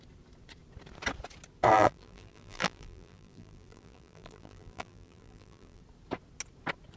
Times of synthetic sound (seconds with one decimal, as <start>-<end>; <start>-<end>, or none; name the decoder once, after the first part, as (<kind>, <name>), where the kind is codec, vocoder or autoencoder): 1.7-5.8 (vocoder, BigVGAN v2)